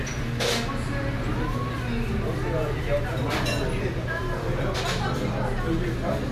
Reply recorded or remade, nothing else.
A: recorded